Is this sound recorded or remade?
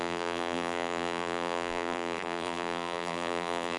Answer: remade